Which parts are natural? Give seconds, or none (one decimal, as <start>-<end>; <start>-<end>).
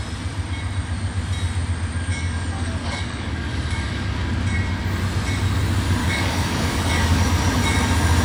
0.0-2.1; 4.2-6.0; 7.2-8.2